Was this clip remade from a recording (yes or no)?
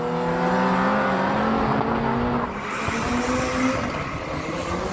no